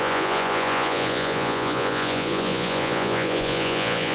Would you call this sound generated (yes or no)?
yes